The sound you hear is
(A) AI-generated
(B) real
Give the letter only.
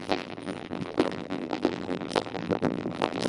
A